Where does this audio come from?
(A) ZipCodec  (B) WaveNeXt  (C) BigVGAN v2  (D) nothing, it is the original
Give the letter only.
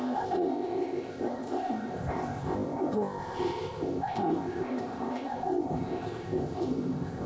A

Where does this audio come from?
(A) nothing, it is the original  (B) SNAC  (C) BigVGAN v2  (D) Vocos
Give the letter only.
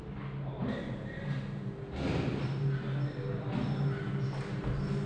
A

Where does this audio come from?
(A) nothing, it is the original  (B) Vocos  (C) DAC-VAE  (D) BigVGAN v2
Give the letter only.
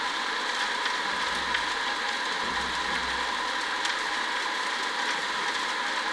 A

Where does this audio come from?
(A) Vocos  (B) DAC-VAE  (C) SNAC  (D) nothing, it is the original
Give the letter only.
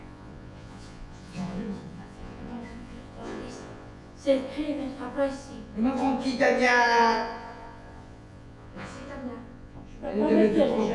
A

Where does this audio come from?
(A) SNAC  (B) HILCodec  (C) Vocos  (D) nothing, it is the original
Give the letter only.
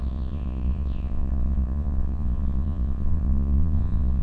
C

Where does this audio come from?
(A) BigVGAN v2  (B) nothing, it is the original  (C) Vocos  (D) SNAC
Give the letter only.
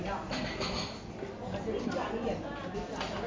B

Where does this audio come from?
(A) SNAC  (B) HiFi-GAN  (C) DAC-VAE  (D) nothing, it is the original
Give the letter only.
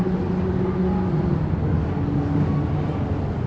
D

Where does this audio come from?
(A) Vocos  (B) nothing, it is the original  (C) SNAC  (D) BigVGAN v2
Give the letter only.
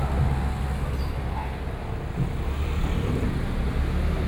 B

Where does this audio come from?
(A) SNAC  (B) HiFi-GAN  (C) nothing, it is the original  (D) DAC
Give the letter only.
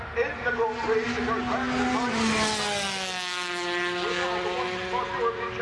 C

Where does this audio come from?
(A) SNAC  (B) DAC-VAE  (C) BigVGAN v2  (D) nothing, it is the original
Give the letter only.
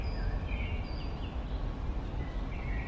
D